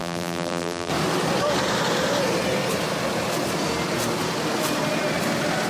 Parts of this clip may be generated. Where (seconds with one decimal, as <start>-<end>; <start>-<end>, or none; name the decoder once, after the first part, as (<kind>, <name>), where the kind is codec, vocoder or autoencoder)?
0.0-0.9 (vocoder, BigVGAN v2)